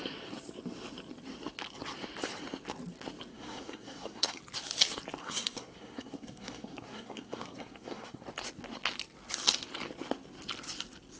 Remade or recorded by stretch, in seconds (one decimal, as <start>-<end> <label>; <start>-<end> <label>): 0.0-3.3 recorded; 3.3-4.4 remade; 4.4-5.2 recorded; 5.2-8.2 remade; 8.2-11.2 recorded